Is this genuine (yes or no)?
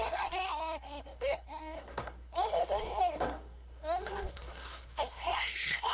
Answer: no